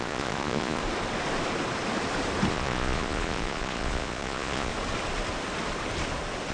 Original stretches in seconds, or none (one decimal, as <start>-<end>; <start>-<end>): 0.8-2.5; 4.7-6.5